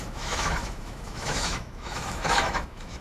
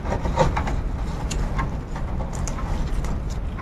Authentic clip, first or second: second